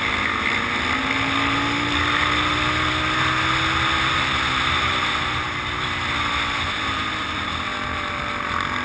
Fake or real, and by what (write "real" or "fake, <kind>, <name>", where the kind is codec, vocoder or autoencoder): real